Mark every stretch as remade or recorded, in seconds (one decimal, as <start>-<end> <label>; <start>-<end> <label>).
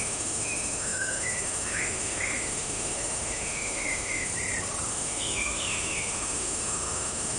0.0-4.3 remade; 4.3-4.9 recorded; 4.9-7.4 remade